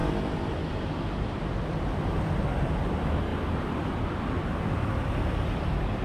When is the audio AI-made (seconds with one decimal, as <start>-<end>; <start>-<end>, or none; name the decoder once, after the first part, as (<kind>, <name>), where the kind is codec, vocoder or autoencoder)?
0.0-6.0 (vocoder, BigVGAN v2)